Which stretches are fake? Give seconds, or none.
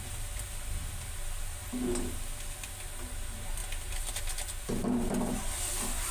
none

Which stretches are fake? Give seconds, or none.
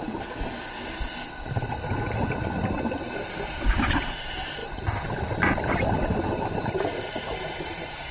none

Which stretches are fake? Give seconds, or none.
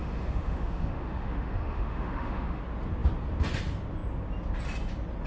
0.0-2.6 (autoencoder, DAC-VAE)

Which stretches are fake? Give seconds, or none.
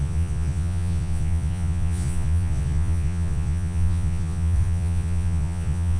0.0-6.0 (vocoder, Vocos)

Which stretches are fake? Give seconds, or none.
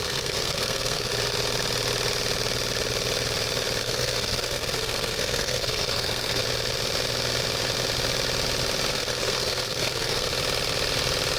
0.0-1.1 (codec, SNAC); 3.8-6.4; 8.9-10.3